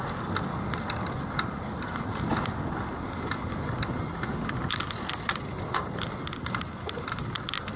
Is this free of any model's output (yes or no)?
yes